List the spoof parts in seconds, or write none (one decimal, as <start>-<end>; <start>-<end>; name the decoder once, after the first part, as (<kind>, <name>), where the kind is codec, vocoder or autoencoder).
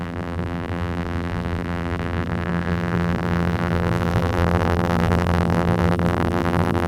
0.0-6.9 (vocoder, BigVGAN v2)